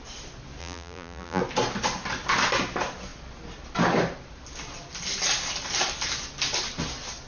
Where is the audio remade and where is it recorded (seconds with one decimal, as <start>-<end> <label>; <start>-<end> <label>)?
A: 0.0-0.6 recorded; 0.6-1.4 remade; 1.4-7.3 recorded